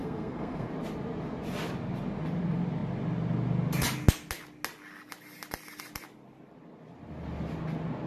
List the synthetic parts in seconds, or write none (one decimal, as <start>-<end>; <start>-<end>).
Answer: 0.0-0.7